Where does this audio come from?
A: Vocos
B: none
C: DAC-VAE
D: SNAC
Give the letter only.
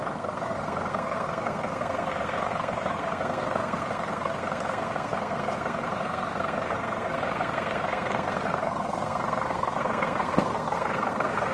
D